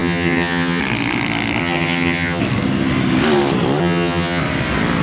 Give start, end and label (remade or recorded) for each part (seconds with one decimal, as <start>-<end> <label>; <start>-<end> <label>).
0.0-0.8 remade; 0.8-1.6 recorded; 1.6-2.4 remade; 2.4-3.8 recorded; 3.8-4.4 remade; 4.4-5.0 recorded